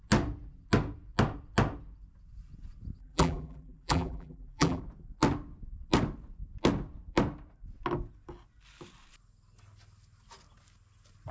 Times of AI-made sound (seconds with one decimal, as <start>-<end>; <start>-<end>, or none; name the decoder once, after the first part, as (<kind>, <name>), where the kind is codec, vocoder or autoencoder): 3.0-4.8 (vocoder, BigVGAN v2)